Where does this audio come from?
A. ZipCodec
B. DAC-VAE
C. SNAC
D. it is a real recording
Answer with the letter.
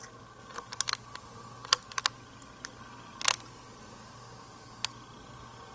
D